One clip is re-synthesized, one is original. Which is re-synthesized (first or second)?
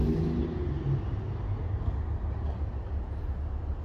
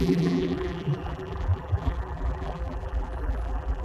second